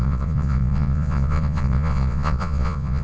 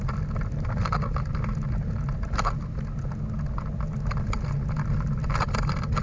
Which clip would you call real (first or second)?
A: second